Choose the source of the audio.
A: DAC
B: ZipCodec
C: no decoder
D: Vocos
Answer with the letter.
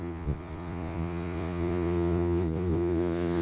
D